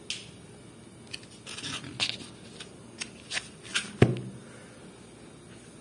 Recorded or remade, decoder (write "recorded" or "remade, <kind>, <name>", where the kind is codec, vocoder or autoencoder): recorded